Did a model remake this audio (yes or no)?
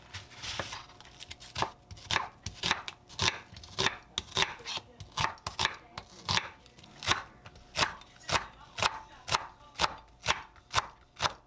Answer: no